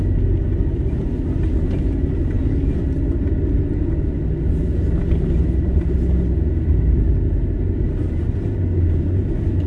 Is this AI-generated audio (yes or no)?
no